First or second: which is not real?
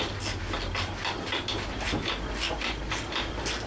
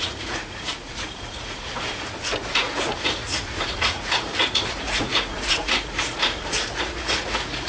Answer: second